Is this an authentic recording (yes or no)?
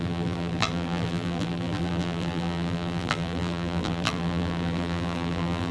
no